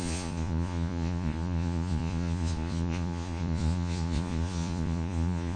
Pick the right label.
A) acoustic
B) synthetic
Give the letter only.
B